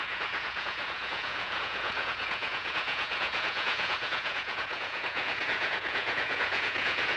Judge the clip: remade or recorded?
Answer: remade